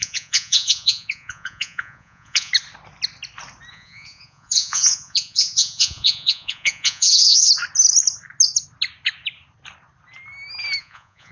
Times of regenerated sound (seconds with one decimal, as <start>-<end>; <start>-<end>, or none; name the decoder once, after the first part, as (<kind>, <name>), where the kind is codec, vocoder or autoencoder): 0.0-2.5 (vocoder, Vocos); 3.7-7.4; 10.8-11.3